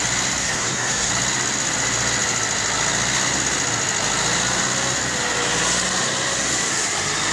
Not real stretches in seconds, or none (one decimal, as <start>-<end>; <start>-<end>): 0.4-1.1